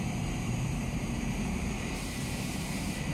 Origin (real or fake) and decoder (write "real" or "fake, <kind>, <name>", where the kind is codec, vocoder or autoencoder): fake, vocoder, BigVGAN v2